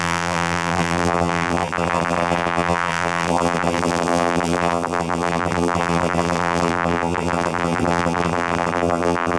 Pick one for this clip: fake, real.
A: fake